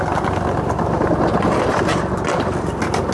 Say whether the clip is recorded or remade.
recorded